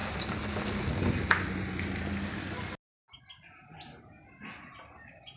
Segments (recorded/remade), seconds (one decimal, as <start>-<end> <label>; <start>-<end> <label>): 0.0-5.4 recorded